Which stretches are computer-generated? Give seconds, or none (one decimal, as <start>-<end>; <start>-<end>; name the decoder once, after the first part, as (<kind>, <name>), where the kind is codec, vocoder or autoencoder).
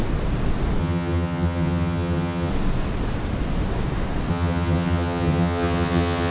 0.8-2.5 (vocoder, HiFi-GAN); 4.3-6.3